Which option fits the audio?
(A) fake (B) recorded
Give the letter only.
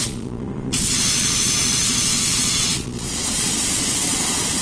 A